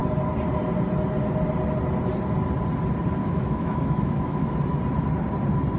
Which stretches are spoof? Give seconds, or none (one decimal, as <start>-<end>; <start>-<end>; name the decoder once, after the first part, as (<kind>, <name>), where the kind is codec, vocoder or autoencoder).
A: 3.2-4.6 (autoencoder, DAC-VAE)